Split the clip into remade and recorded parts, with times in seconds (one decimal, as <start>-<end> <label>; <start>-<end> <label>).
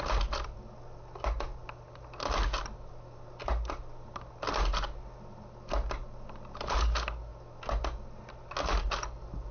0.0-9.5 recorded